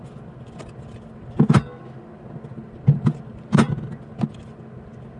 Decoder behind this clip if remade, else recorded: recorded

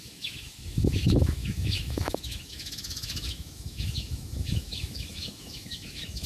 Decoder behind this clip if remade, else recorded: remade, autoencoder, DAC-VAE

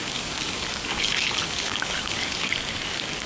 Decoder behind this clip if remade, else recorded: remade, codec, DAC